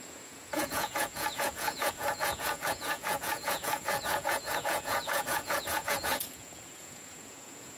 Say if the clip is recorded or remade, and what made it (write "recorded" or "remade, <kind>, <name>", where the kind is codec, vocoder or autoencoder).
remade, vocoder, Vocos